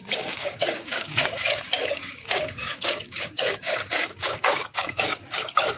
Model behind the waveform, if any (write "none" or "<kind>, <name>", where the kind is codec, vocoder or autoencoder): codec, DAC